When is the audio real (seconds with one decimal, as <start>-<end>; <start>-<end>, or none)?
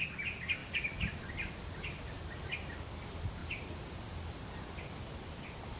0.0-5.8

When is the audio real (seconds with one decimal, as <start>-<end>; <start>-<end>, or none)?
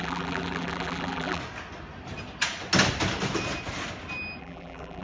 1.4-4.4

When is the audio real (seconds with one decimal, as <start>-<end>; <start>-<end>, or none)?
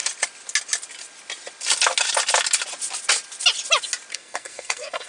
0.0-4.1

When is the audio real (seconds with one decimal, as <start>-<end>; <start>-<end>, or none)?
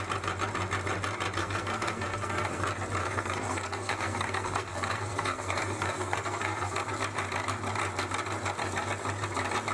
0.0-1.4; 2.6-3.0; 6.9-9.7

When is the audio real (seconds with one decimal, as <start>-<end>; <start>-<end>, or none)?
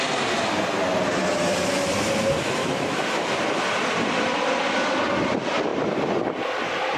0.0-2.6; 3.3-7.0